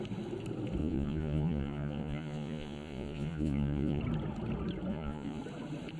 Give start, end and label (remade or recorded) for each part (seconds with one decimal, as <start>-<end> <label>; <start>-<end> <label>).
0.0-0.8 recorded; 0.8-4.0 remade; 4.0-4.9 recorded; 4.9-5.4 remade; 5.4-6.0 recorded